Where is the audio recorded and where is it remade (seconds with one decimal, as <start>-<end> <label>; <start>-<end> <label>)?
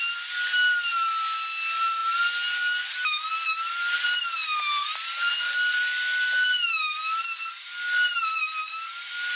0.0-9.4 recorded